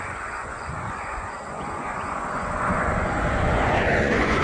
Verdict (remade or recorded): remade